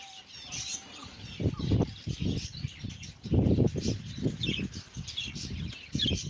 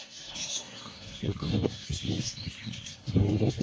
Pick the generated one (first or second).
second